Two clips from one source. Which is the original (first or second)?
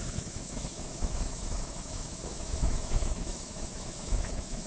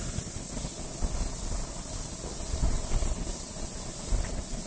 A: second